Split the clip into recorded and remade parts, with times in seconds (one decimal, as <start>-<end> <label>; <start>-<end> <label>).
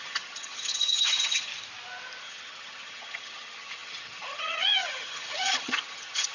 0.0-1.5 remade; 1.5-2.2 recorded; 2.2-6.3 remade